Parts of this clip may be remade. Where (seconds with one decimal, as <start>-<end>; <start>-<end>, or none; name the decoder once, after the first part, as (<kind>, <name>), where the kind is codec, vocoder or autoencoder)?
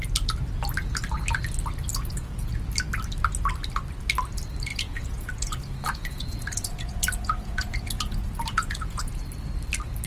1.9-2.5 (vocoder, Vocos); 4.7-9.2